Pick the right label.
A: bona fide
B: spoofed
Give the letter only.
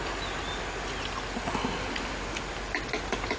A